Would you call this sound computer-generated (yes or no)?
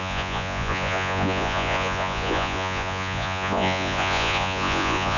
yes